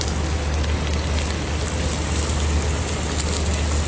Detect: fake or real real